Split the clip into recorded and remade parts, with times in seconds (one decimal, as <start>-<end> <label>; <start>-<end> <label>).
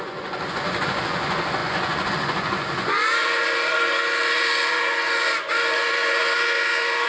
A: 0.0-7.1 remade